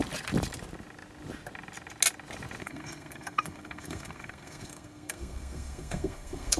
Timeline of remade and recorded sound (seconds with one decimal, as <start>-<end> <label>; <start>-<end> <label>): 0.0-2.6 recorded; 2.6-6.6 remade